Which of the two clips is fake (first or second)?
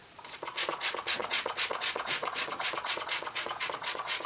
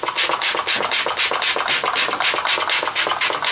first